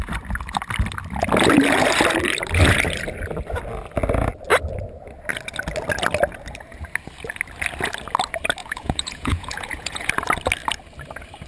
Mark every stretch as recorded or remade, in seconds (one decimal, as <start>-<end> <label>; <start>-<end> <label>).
0.0-8.6 recorded; 8.6-10.1 remade; 10.1-11.5 recorded